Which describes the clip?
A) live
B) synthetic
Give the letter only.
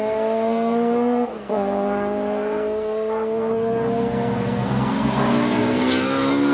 B